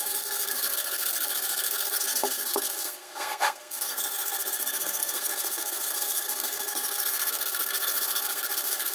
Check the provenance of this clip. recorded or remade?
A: remade